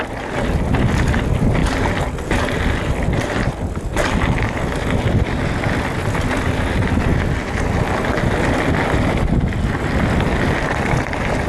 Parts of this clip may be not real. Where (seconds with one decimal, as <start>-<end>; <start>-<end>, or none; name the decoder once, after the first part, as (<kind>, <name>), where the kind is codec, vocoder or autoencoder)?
none